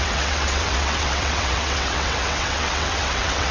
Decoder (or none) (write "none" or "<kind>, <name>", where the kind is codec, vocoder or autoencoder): vocoder, WaveNeXt